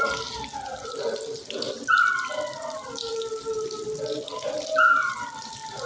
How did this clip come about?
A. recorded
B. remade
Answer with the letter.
A